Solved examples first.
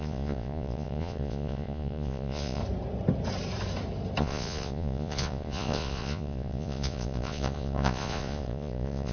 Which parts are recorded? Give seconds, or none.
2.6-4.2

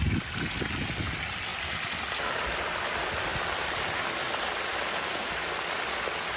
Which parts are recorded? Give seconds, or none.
0.0-6.4

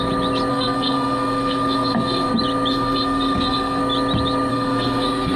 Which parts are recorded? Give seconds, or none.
0.0-0.5; 2.3-2.7; 3.8-4.5

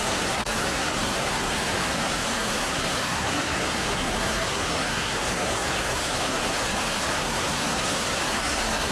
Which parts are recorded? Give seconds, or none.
none

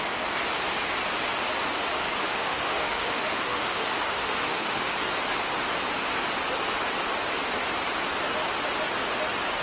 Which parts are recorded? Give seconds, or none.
0.0-2.2; 4.9-9.6